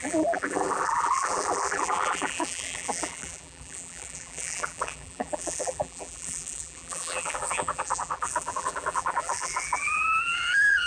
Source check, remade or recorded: remade